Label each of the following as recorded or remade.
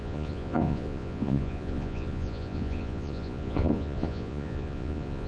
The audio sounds remade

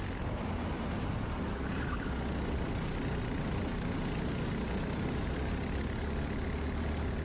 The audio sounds recorded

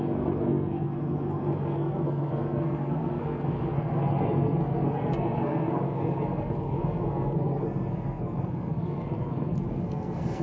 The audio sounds remade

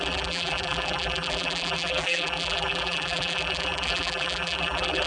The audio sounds remade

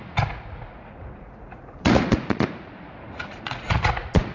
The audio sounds remade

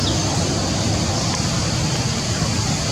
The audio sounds recorded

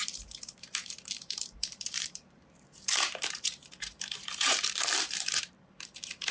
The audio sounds remade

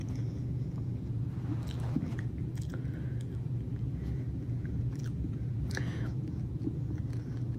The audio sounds remade